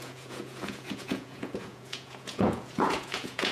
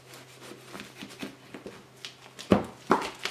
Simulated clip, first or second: first